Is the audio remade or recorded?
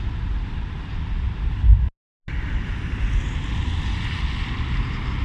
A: recorded